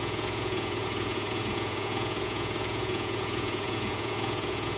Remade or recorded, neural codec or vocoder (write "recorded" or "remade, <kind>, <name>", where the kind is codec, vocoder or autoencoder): remade, vocoder, Vocos